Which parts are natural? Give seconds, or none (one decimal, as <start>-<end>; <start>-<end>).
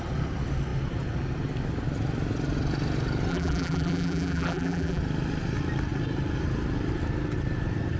0.0-3.3; 5.0-8.0